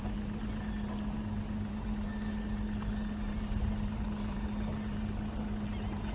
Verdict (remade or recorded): recorded